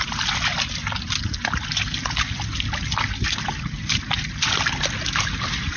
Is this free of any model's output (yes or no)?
yes